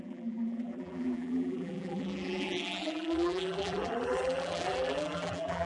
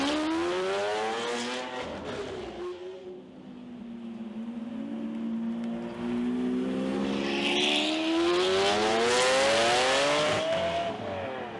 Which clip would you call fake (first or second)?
first